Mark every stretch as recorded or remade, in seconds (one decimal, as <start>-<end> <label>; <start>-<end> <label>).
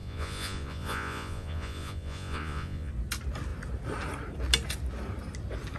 0.0-2.9 remade; 2.9-5.8 recorded